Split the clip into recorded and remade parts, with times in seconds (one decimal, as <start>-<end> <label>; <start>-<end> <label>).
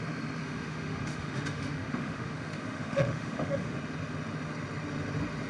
0.0-0.4 recorded; 0.4-3.7 remade; 3.7-5.5 recorded